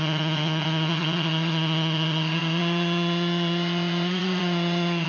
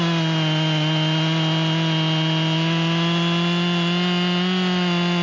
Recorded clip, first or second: second